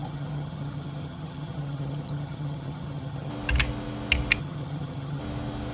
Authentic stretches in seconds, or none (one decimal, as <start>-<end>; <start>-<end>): 3.3-4.4; 5.2-5.7